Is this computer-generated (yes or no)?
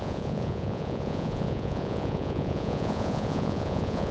yes